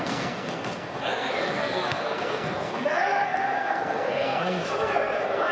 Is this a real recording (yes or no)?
no